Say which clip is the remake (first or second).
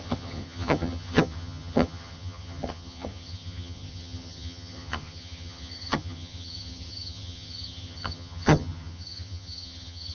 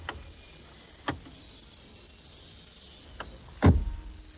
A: first